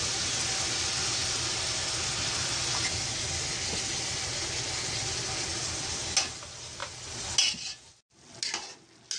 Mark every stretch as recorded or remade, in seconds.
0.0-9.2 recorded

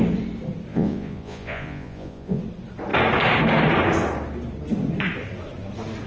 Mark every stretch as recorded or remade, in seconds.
0.0-0.7 recorded; 0.7-2.4 remade; 2.4-6.1 recorded

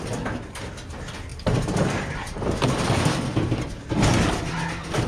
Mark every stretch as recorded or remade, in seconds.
0.0-5.1 recorded

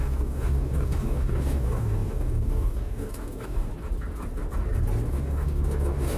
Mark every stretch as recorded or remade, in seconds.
0.0-3.7 remade; 3.7-5.1 recorded; 5.1-6.2 remade

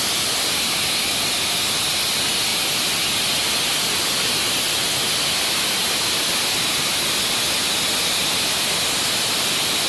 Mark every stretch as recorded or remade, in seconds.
0.0-9.9 recorded

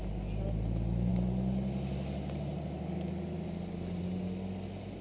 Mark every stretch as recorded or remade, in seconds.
0.0-5.0 recorded

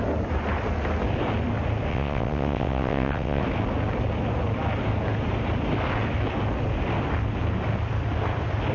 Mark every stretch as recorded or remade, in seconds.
0.0-1.9 recorded; 1.9-3.4 remade; 3.4-8.7 recorded